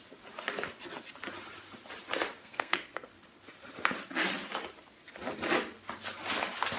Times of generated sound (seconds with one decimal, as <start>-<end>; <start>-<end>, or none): 2.4-3.1